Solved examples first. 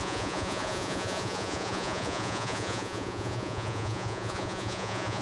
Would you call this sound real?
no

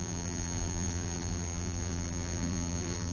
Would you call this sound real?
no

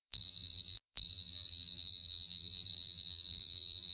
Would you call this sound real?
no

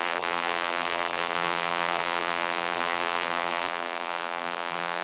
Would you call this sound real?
no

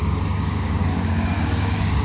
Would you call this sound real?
no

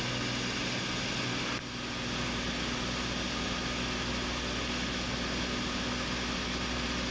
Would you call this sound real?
yes